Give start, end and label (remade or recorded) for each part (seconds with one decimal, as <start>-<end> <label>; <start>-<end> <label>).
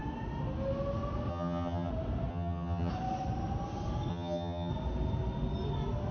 0.0-1.3 recorded; 1.3-1.9 remade; 1.9-2.3 recorded; 2.3-2.9 remade; 2.9-4.1 recorded; 4.1-4.7 remade; 4.7-6.1 recorded